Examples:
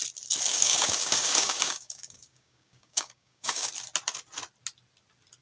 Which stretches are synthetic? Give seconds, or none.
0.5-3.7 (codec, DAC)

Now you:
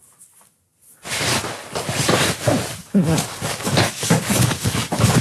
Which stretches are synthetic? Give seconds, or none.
2.8-5.2 (codec, DAC)

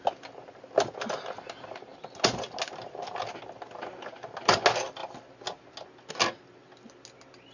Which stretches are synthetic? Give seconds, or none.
none

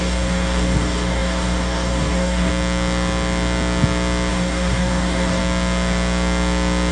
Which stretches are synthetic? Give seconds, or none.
0.0-2.5 (codec, DAC); 4.3-5.4

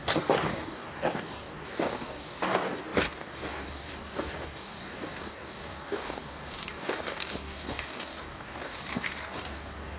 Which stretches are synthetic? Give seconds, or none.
0.0-10.0 (codec, DAC)

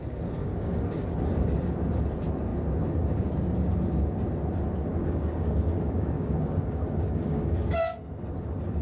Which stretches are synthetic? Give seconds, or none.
0.4-1.3 (codec, DAC); 4.9-8.0